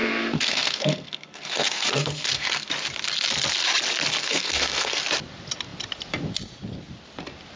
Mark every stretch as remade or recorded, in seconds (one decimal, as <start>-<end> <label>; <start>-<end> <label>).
0.0-2.7 remade; 2.7-4.2 recorded; 4.2-5.0 remade; 5.0-7.6 recorded